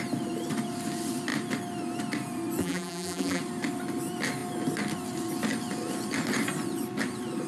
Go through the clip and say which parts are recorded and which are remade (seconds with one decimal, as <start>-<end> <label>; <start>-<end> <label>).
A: 0.0-2.6 recorded; 2.6-3.4 remade; 3.4-7.5 recorded